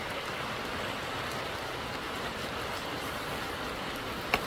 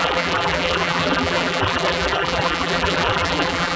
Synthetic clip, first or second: second